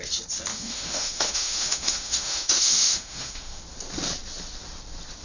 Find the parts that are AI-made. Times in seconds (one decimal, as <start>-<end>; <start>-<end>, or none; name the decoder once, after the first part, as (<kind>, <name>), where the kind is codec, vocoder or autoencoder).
0.5-3.6 (autoencoder, DAC-VAE)